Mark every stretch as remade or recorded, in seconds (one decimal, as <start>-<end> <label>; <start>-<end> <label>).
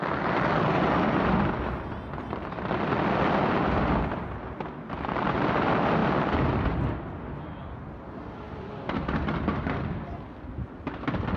0.0-11.4 recorded